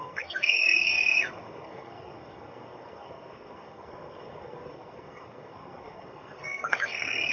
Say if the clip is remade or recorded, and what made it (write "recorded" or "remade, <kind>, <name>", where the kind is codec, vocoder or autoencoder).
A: remade, codec, SNAC